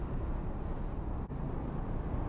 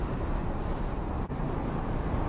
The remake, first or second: second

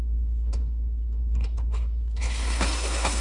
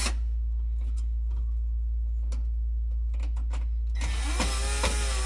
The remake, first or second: first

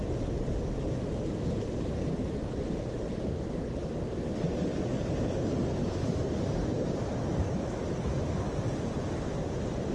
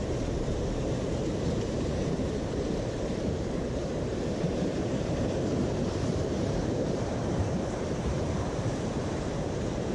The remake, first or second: second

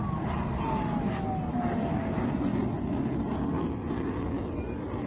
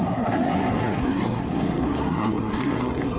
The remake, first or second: second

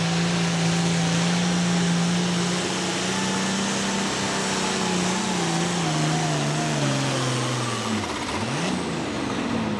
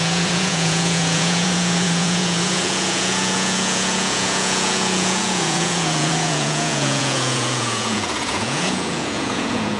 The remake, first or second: second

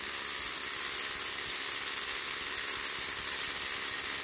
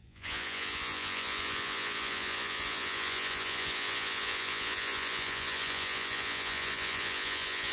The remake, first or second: second